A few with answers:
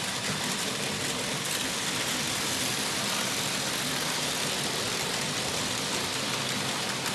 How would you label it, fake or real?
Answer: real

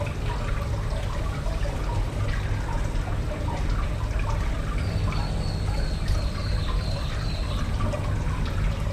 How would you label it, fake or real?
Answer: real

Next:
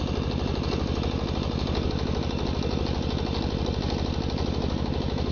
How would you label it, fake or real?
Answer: real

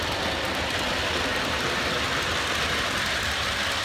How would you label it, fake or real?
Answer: real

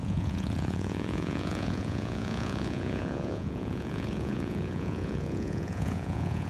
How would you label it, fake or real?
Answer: fake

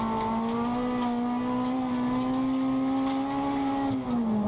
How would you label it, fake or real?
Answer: real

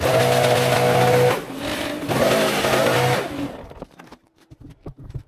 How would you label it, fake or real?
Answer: real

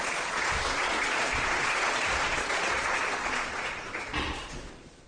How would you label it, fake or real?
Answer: fake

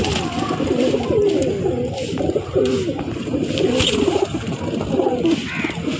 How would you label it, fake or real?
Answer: real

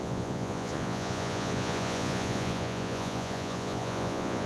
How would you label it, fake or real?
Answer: fake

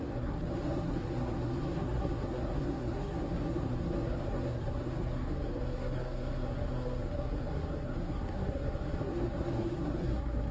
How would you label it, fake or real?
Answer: fake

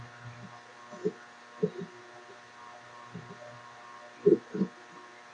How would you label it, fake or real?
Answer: real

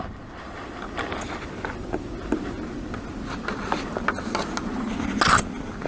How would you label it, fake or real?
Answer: real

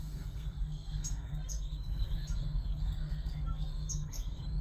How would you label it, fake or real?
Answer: fake